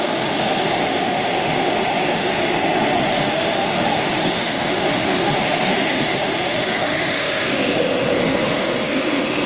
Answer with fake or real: fake